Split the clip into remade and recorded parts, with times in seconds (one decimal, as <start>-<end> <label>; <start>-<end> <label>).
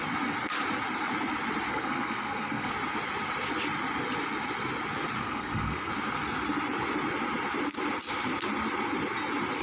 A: 0.0-1.7 recorded; 1.7-2.7 remade; 2.7-5.2 recorded; 5.2-5.9 remade; 5.9-9.6 recorded